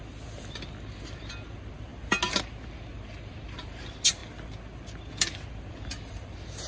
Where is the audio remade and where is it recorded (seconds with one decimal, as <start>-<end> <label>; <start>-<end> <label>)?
0.0-6.7 recorded